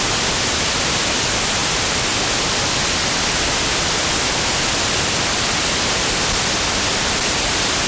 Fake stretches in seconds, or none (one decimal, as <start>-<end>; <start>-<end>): none